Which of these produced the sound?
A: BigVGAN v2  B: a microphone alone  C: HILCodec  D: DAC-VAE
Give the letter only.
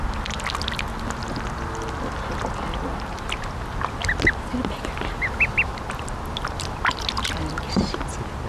B